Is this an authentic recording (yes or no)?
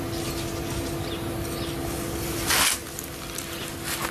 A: yes